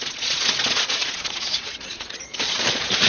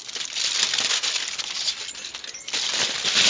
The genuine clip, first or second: second